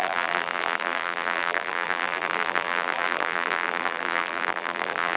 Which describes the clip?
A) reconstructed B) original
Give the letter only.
A